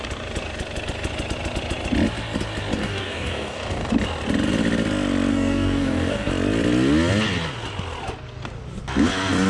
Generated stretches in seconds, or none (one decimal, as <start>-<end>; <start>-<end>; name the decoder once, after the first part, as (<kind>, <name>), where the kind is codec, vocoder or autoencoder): 2.8-3.9 (codec, DAC); 5.3-6.3